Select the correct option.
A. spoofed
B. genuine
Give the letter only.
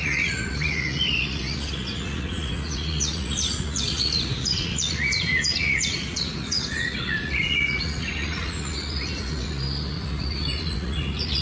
A